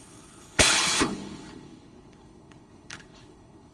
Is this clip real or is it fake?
fake